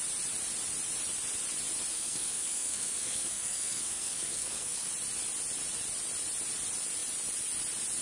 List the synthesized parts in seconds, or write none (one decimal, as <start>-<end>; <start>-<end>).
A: 1.9-4.9